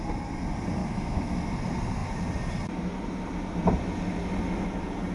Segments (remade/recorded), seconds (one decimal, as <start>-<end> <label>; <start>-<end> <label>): 0.0-0.8 recorded; 0.8-1.4 remade; 1.4-5.1 recorded